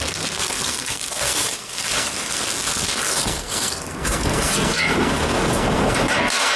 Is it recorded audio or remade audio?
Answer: remade